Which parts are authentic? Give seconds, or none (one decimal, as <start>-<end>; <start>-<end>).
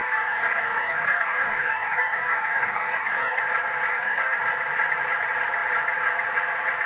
3.4-3.9; 4.4-6.9